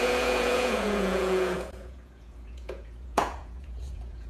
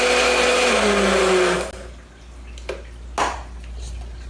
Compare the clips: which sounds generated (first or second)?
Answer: first